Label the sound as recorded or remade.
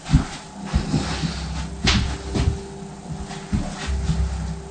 recorded